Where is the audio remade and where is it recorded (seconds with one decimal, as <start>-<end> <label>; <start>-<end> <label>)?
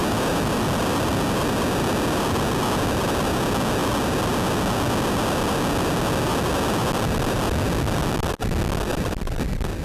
0.0-1.5 remade; 1.5-9.8 recorded